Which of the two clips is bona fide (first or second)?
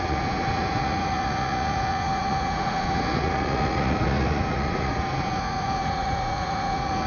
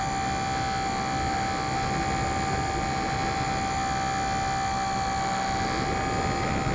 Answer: second